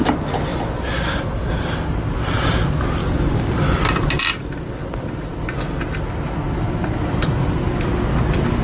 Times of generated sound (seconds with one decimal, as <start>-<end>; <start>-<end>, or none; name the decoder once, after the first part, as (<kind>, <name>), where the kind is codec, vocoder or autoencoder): 0.5-1.7 (vocoder, BigVGAN v2); 3.0-4.2